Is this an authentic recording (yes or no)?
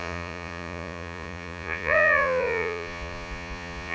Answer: no